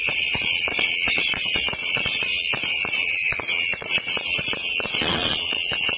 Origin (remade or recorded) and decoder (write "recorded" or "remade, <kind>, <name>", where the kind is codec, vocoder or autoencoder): remade, vocoder, Vocos